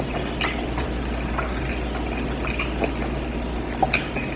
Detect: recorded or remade recorded